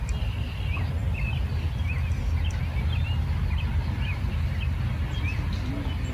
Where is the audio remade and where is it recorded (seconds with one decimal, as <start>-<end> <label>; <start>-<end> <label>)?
0.0-3.7 recorded; 3.7-4.3 remade; 4.3-6.1 recorded